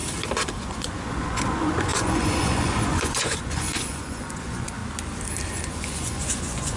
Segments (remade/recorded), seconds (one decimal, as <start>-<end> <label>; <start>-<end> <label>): 0.0-0.6 recorded; 0.6-4.8 remade; 4.8-5.5 recorded; 5.5-6.8 remade